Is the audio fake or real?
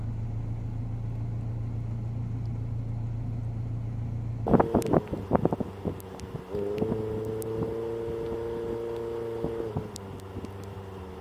real